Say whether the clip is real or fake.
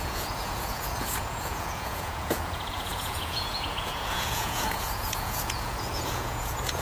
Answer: fake